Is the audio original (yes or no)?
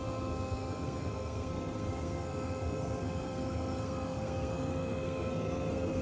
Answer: no